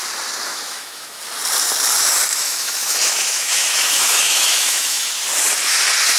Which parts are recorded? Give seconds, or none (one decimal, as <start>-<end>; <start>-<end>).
0.0-0.5; 1.2-2.3; 5.1-6.2